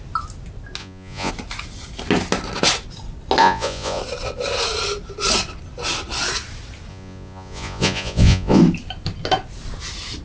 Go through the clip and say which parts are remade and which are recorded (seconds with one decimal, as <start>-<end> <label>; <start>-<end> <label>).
0.0-0.8 recorded; 0.8-1.3 remade; 1.3-3.4 recorded; 3.4-4.0 remade; 4.0-6.9 recorded; 6.9-8.6 remade; 8.6-10.2 recorded